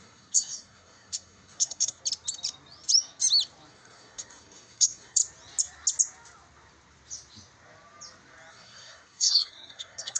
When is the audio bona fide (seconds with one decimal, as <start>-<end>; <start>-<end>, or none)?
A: 2.0-3.7; 5.2-8.5